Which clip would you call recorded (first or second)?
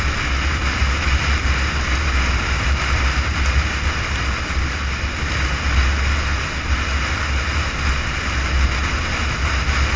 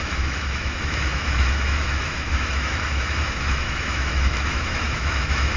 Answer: first